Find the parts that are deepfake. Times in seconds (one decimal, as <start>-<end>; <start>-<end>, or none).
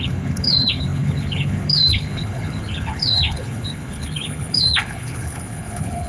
0.0-6.1